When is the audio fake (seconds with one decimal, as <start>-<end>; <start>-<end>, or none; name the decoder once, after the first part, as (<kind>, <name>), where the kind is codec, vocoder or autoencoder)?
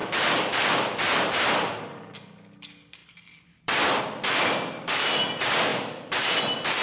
0.0-1.2 (vocoder, BigVGAN v2); 3.0-4.0; 5.7-6.8